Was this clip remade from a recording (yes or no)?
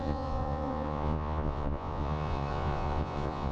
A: yes